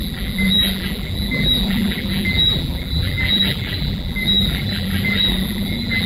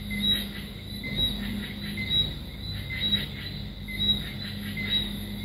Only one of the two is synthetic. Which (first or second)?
first